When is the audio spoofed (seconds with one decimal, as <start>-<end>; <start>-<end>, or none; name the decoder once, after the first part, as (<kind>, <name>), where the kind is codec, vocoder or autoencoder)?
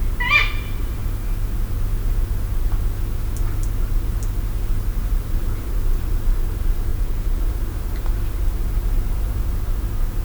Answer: 6.9-7.4 (vocoder, Vocos)